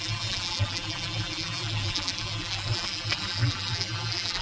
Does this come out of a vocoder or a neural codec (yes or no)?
yes